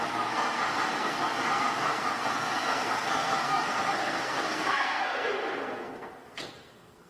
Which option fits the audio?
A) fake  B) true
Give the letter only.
A